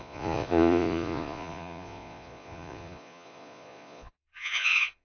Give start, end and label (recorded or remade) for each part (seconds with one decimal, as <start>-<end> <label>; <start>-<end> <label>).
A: 0.0-5.0 remade